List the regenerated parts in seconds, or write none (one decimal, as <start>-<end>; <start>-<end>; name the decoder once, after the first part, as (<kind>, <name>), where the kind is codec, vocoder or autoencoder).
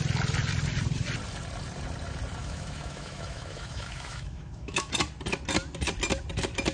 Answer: 2.4-4.9 (autoencoder, DAC-VAE)